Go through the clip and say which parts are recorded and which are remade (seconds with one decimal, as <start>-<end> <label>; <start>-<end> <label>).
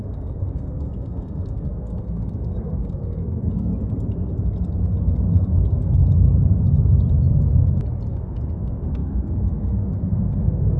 0.0-3.7 remade; 3.7-5.3 recorded; 5.3-6.0 remade; 6.0-8.1 recorded; 8.1-10.8 remade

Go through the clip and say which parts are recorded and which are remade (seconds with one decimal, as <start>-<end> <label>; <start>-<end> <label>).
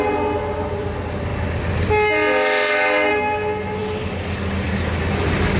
0.0-5.6 recorded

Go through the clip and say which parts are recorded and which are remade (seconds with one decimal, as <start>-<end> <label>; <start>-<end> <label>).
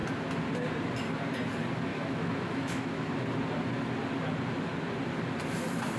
0.0-1.9 recorded; 1.9-3.1 remade; 3.1-6.0 recorded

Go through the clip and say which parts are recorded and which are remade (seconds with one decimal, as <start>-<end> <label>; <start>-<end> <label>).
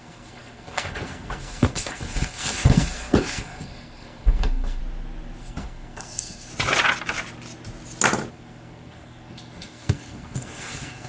0.0-4.8 remade; 4.8-5.4 recorded; 5.4-6.5 remade; 6.5-8.3 recorded; 8.3-11.1 remade